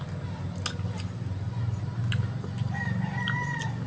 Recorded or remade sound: recorded